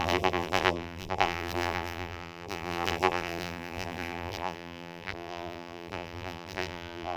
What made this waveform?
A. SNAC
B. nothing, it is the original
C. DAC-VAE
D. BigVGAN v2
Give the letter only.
D